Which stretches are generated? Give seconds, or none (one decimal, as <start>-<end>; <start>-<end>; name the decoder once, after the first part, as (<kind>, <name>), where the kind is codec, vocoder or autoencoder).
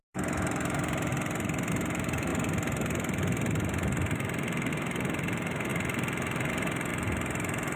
0.0-1.1 (vocoder, BigVGAN v2); 1.7-2.3; 4.7-5.7; 6.5-6.9